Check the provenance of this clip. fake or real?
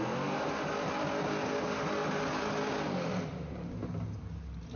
real